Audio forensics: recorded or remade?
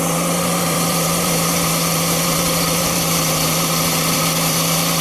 remade